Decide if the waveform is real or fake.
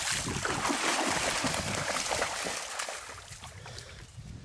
real